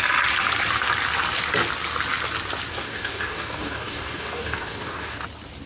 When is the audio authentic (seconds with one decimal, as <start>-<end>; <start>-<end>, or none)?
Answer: 0.0-2.7; 5.2-5.7